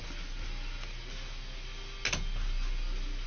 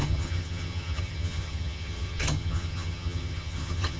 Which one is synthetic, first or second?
second